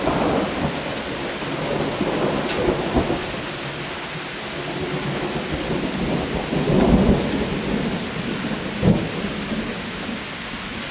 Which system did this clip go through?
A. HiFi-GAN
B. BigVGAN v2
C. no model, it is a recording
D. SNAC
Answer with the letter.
C